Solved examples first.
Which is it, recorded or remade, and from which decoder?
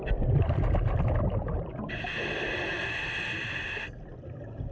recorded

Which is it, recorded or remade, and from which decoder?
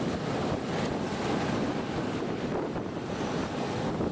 recorded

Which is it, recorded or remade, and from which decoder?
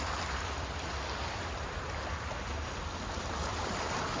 recorded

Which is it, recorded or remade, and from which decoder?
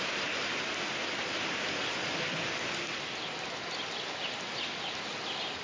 recorded